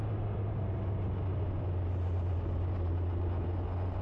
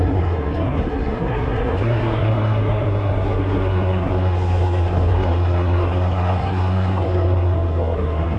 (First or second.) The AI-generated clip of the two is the second